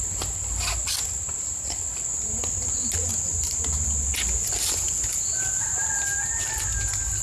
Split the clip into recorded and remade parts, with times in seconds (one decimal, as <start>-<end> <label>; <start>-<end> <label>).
0.0-7.2 recorded